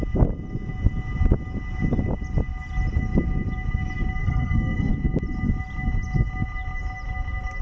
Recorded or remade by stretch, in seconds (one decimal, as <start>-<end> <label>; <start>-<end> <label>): 0.0-4.2 recorded; 4.2-4.9 remade; 4.9-7.6 recorded